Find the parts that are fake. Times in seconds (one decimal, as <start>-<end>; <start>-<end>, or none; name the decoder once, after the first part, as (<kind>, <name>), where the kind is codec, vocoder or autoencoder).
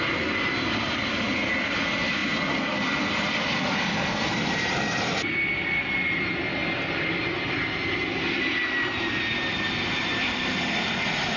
none